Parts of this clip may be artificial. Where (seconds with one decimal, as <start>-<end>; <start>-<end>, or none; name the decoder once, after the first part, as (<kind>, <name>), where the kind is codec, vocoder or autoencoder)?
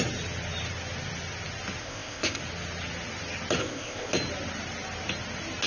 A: 1.8-2.4 (codec, ZipCodec); 3.6-4.1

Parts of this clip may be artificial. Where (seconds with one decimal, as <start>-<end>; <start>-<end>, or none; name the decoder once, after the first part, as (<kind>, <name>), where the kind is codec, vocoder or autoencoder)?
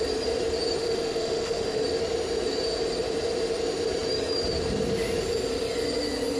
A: 0.8-1.8 (autoencoder, DAC-VAE)